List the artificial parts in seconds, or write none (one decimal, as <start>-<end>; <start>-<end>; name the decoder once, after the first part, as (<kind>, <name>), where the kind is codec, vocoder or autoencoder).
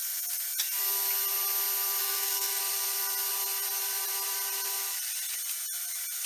2.0-2.6 (codec, SNAC)